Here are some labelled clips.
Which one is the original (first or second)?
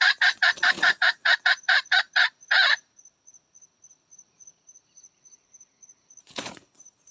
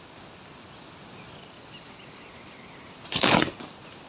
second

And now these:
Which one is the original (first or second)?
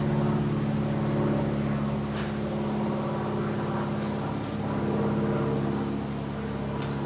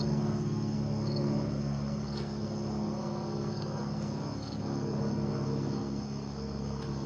first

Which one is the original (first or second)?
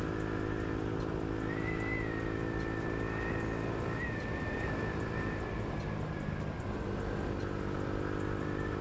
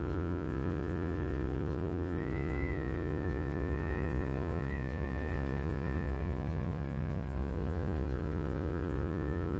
first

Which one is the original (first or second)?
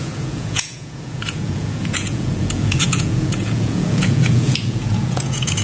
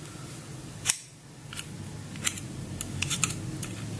second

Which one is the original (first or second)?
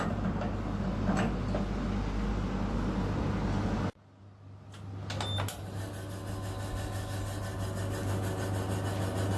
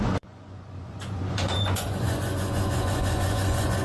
first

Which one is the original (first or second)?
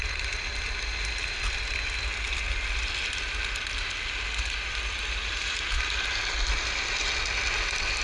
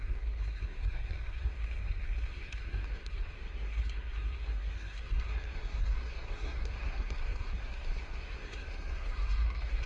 first